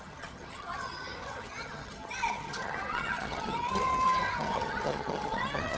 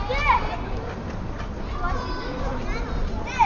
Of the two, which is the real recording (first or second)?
second